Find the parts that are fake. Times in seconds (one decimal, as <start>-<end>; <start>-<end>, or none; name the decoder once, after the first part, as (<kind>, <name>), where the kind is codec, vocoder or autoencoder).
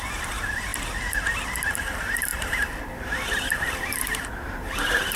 0.0-0.7 (vocoder, BigVGAN v2); 1.8-5.2